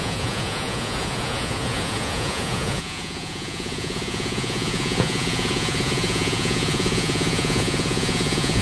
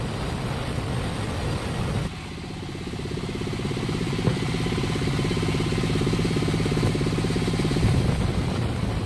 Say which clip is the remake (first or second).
first